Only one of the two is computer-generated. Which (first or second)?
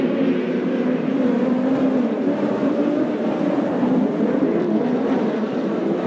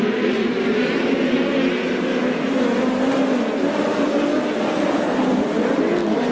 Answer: first